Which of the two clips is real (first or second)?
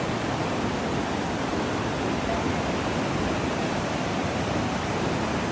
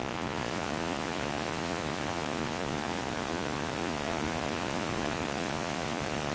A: first